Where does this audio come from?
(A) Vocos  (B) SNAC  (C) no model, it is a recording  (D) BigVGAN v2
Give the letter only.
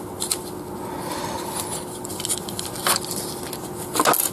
C